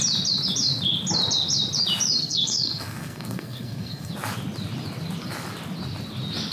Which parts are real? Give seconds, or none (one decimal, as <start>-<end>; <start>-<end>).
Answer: 0.0-2.2; 4.1-6.5